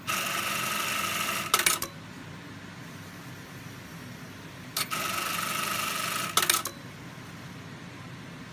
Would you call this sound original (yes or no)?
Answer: yes